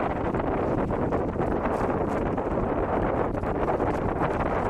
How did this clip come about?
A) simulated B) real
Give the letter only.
B